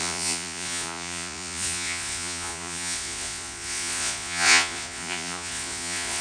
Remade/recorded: remade